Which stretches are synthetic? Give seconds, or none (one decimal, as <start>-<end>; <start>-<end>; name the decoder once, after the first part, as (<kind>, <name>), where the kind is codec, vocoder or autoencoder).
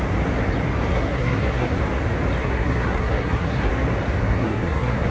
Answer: 0.9-1.8 (codec, SNAC); 2.4-3.7; 4.2-5.1